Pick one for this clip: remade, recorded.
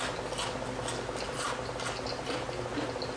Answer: recorded